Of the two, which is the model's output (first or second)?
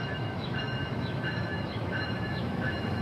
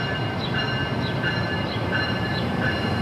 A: first